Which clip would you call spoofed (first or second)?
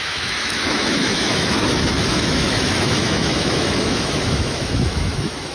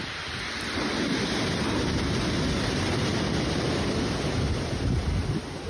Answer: first